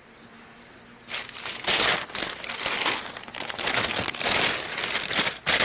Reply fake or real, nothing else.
real